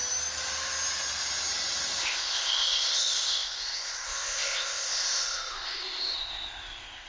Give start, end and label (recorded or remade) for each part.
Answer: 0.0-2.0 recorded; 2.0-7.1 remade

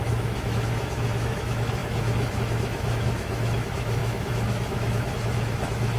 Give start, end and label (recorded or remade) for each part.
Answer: 0.0-6.0 remade

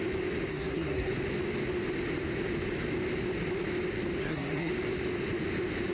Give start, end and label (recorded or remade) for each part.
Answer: 0.0-0.5 recorded; 0.5-1.1 remade; 1.1-4.2 recorded; 4.2-4.7 remade; 4.7-5.9 recorded